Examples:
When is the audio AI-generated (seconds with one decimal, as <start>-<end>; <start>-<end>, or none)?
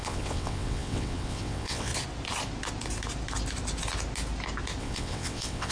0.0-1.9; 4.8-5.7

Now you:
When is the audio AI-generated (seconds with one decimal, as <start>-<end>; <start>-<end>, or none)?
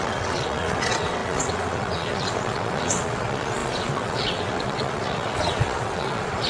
0.0-6.5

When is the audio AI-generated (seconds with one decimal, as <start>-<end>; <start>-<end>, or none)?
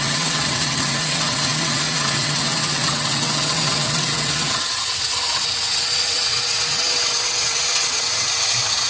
0.0-8.9